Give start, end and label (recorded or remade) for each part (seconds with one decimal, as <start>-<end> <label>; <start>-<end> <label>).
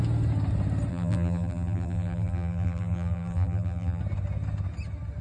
0.0-0.9 recorded; 0.9-4.0 remade; 4.0-5.2 recorded